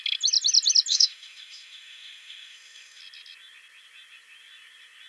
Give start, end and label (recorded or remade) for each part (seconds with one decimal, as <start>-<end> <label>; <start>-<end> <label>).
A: 0.0-0.9 recorded; 0.9-3.0 remade; 3.0-5.1 recorded